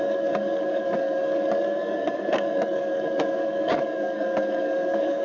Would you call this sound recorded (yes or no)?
no